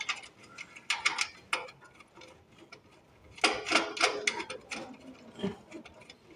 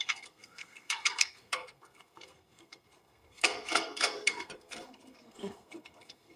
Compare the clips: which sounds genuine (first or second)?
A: first